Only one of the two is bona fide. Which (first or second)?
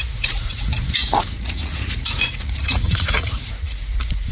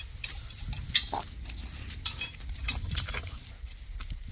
second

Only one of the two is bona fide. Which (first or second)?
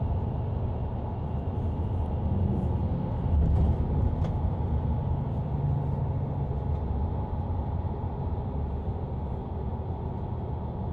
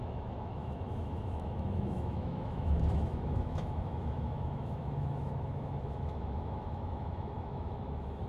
first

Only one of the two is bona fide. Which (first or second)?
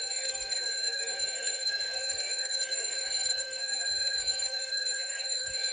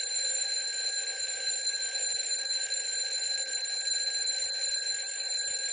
second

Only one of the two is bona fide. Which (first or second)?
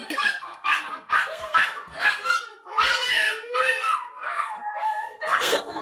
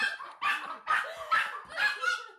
second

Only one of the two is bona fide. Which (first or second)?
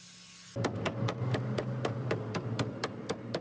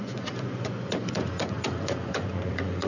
first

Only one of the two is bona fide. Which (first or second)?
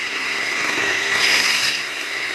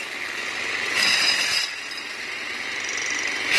second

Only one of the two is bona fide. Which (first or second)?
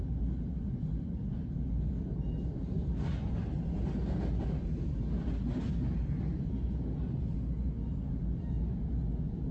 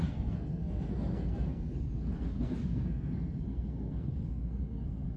first